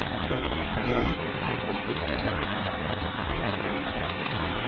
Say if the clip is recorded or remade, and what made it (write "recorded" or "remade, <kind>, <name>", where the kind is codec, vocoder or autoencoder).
remade, codec, SNAC